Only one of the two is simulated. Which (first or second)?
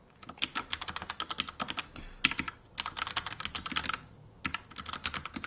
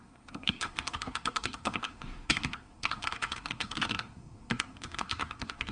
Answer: second